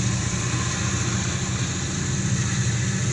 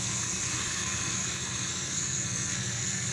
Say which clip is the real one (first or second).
first